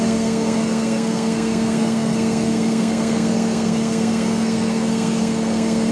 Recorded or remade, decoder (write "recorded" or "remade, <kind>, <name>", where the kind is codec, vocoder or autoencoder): remade, codec, SNAC